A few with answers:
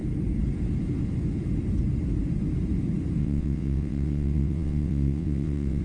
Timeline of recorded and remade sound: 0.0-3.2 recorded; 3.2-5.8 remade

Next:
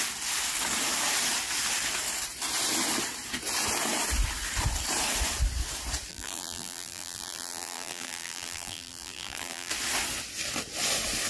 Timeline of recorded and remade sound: 0.0-6.1 recorded; 6.1-9.7 remade; 9.7-11.3 recorded

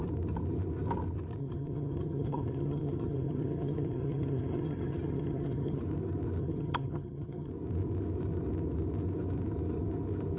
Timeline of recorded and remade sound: 0.0-1.4 recorded; 1.4-5.8 remade; 5.8-6.4 recorded; 6.4-7.5 remade; 7.5-10.4 recorded

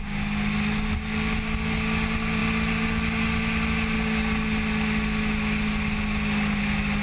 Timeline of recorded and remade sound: 0.0-7.0 recorded

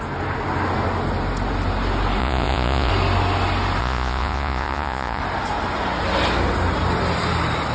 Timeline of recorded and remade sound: 0.0-2.2 recorded; 2.2-2.9 remade; 2.9-3.8 recorded; 3.8-5.2 remade; 5.2-7.7 recorded

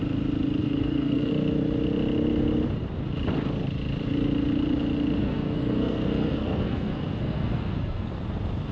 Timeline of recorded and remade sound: 0.0-0.6 recorded; 0.6-1.3 remade; 1.3-5.2 recorded; 5.2-8.1 remade; 8.1-8.7 recorded

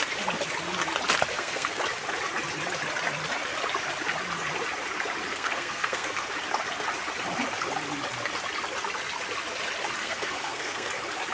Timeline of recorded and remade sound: 0.0-1.3 recorded; 1.3-1.8 remade; 1.8-5.3 recorded; 5.3-6.3 remade; 6.3-10.0 recorded; 10.0-10.9 remade; 10.9-11.3 recorded